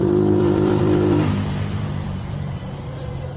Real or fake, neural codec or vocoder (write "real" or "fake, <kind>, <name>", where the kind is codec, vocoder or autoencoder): fake, vocoder, BigVGAN v2